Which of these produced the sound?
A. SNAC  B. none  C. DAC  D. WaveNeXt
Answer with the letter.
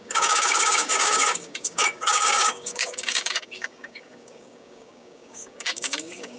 C